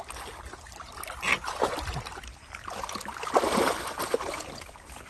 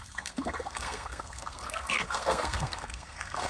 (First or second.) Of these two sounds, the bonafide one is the first